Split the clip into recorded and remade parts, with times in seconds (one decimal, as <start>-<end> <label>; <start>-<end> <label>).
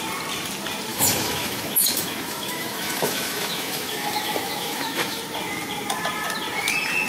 0.0-0.9 recorded; 0.9-5.2 remade; 5.2-7.1 recorded